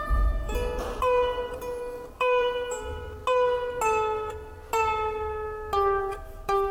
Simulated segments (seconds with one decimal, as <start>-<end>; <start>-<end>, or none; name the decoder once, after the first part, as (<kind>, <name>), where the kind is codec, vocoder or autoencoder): 0.0-3.2 (vocoder, BigVGAN v2); 6.0-6.7